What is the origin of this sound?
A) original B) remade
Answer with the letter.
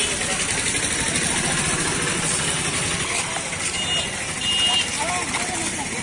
A